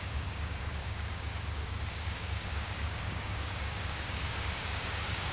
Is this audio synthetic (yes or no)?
yes